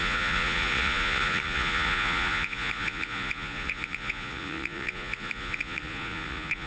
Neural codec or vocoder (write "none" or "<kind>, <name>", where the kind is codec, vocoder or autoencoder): vocoder, Vocos